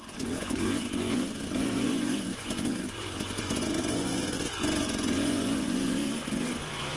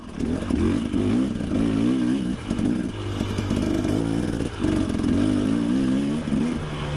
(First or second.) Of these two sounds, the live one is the second